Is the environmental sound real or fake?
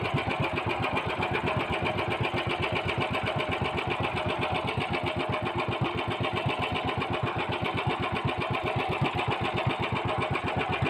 real